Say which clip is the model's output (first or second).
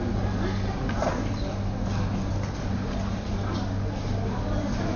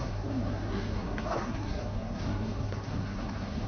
second